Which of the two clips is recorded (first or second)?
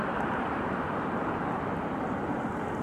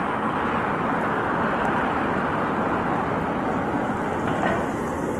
second